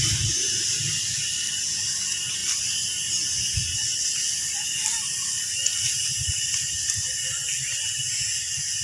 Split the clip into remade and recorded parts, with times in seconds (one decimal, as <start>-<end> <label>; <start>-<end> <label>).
0.0-8.8 recorded